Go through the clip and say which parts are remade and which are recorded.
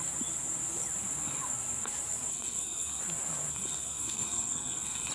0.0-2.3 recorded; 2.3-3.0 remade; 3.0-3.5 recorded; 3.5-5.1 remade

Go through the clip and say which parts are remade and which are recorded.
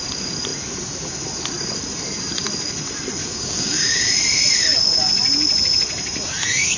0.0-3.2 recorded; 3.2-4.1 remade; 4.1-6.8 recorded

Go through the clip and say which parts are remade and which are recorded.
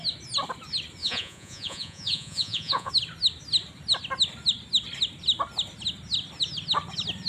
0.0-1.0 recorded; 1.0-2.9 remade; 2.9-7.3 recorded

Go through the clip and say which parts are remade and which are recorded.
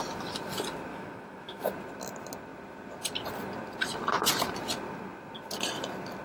0.0-0.9 recorded; 0.9-1.7 remade; 1.7-6.2 recorded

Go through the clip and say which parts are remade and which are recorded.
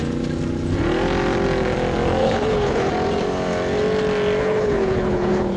0.0-2.2 recorded; 2.2-2.9 remade; 2.9-4.4 recorded; 4.4-5.6 remade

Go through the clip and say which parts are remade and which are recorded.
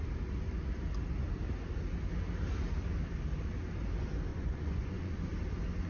0.0-4.3 recorded; 4.3-5.3 remade; 5.3-5.9 recorded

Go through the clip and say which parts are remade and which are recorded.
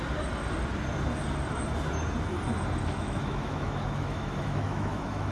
0.0-2.8 recorded; 2.8-5.3 remade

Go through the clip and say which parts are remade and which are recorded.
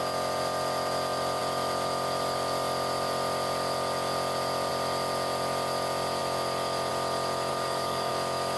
0.0-7.5 recorded; 7.5-8.1 remade; 8.1-8.6 recorded